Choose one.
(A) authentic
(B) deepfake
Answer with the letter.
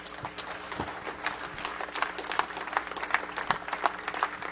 A